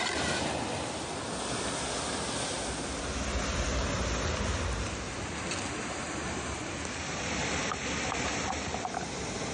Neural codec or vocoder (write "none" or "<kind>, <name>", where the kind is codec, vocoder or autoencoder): none